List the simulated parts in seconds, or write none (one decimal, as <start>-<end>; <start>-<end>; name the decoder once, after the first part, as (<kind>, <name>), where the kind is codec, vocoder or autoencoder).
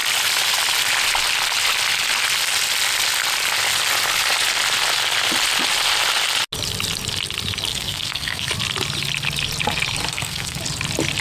7.7-8.5 (codec, SNAC); 10.1-10.6